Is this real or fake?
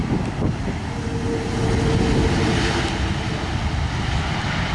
real